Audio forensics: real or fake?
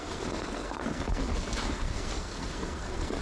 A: fake